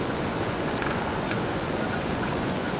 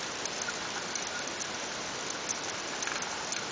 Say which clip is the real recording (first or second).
second